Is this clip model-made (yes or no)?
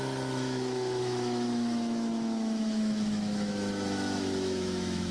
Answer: yes